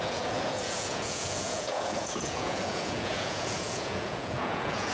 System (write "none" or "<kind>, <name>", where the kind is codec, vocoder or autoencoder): vocoder, Vocos